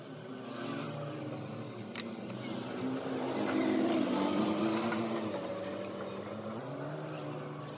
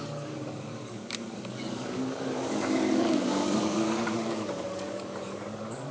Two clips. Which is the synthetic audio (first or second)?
second